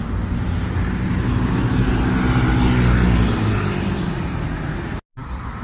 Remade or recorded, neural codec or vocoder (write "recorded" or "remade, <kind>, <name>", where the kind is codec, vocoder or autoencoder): recorded